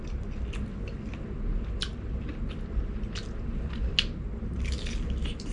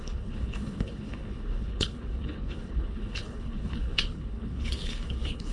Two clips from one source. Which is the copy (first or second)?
second